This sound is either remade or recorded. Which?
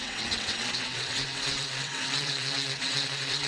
remade